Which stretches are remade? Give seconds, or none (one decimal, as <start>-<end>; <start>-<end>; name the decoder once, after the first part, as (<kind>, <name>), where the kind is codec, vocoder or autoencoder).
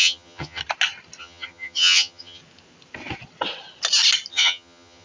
0.0-0.6 (vocoder, HiFi-GAN); 1.2-2.4; 4.3-5.0